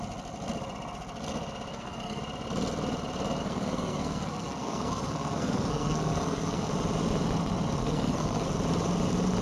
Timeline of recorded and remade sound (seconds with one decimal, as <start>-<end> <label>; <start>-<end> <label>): 0.0-1.7 recorded; 1.7-2.2 remade; 2.2-3.4 recorded; 3.4-6.7 remade; 6.7-7.8 recorded; 7.8-8.5 remade; 8.5-9.4 recorded